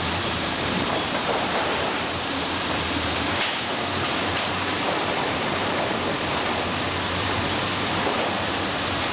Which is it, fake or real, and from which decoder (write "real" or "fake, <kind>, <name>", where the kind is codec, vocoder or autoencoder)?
fake, vocoder, BigVGAN v2